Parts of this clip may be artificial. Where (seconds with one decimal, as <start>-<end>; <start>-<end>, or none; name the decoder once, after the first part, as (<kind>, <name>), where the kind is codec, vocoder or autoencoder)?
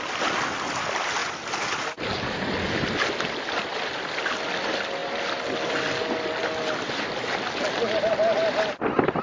none